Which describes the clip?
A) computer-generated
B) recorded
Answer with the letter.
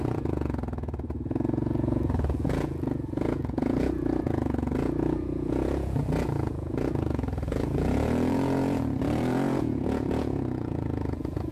A